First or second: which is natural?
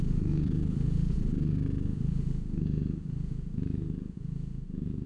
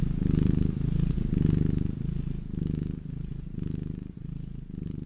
second